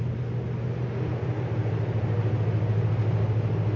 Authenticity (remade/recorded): recorded